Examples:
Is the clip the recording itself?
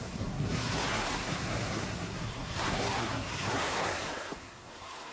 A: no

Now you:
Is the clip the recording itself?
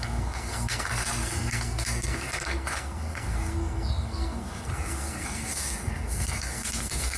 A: no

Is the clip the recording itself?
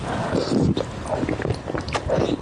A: yes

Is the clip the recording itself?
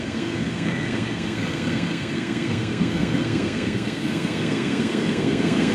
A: no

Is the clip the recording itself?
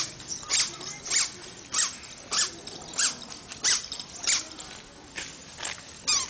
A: yes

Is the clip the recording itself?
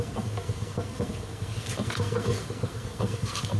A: no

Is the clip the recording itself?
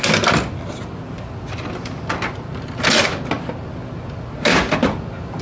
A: yes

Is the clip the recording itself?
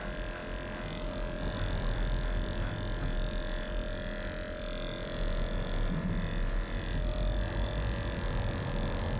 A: yes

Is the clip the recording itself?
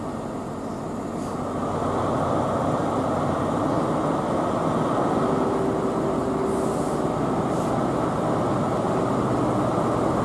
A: yes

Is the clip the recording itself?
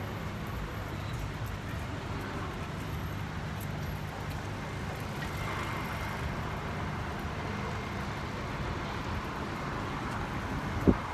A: yes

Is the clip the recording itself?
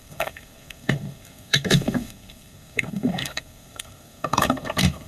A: no